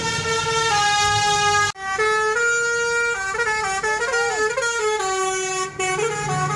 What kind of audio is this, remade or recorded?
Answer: recorded